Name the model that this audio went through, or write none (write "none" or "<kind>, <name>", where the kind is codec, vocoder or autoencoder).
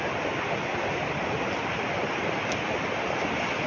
none